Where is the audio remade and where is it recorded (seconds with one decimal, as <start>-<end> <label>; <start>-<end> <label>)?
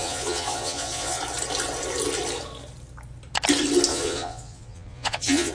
0.0-1.2 remade; 1.2-3.9 recorded; 3.9-5.5 remade